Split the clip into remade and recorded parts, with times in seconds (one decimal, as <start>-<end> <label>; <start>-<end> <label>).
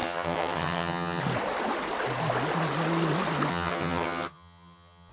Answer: 0.0-1.2 remade; 1.2-3.5 recorded; 3.5-5.1 remade